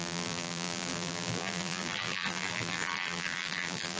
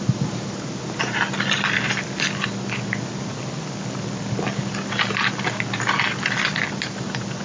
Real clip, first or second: second